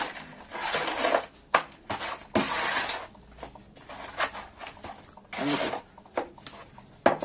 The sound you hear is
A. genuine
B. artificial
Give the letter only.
A